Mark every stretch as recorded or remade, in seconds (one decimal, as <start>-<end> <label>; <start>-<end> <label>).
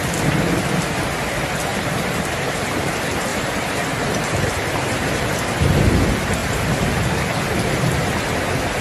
0.0-1.7 recorded; 1.7-2.9 remade; 2.9-3.3 recorded; 3.3-5.8 remade; 5.8-6.4 recorded; 6.4-7.0 remade; 7.0-8.8 recorded